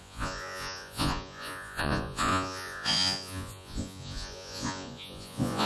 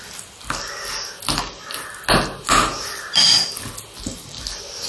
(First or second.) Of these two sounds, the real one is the second